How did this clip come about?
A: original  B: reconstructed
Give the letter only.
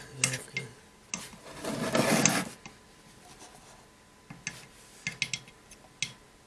A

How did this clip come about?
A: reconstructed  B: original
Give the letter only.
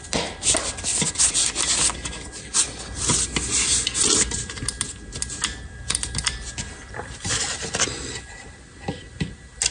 B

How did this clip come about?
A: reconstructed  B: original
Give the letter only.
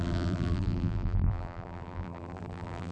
A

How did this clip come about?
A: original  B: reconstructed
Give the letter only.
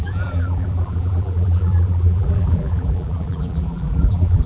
B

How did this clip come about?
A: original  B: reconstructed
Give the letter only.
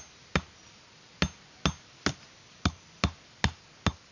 A